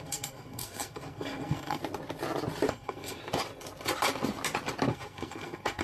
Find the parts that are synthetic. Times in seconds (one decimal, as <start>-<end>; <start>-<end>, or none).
0.0-1.8; 2.7-3.2; 4.9-5.8